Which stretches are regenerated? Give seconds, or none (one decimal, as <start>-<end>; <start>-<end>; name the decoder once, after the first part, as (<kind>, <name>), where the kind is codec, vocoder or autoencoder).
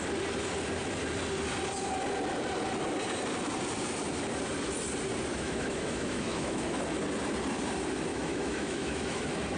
5.3-6.8 (autoencoder, DAC-VAE); 8.1-9.2